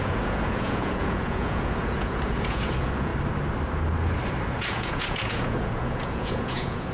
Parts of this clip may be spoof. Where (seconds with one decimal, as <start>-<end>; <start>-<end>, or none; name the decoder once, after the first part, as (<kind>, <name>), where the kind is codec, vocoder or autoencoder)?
0.0-3.1 (vocoder, Vocos); 4.6-6.9